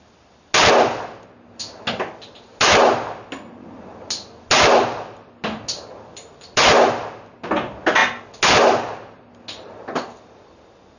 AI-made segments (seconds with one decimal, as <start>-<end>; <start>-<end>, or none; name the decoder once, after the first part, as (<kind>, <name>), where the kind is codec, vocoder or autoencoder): none